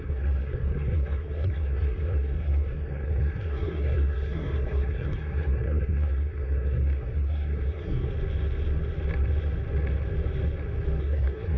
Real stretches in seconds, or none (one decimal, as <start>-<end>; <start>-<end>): 8.1-11.0